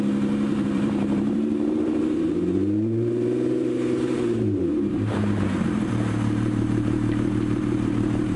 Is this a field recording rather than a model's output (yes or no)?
no